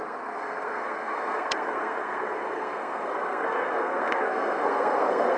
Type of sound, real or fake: fake